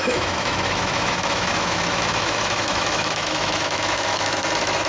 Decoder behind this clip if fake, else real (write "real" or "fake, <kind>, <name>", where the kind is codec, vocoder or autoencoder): fake, autoencoder, DAC-VAE